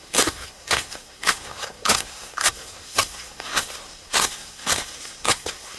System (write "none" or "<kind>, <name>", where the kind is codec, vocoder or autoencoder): codec, SNAC